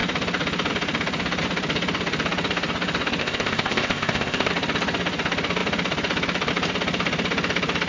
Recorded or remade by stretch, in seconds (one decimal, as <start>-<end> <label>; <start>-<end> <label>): 0.0-3.2 recorded; 3.2-4.5 remade; 4.5-7.9 recorded